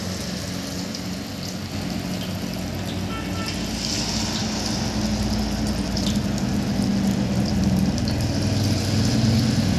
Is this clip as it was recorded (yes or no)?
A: yes